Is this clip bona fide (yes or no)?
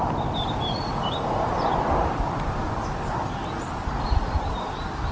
yes